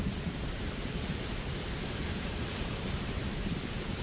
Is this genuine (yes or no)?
no